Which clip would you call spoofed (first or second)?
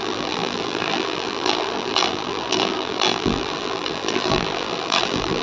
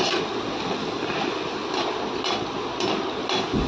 first